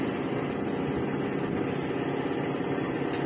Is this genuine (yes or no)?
yes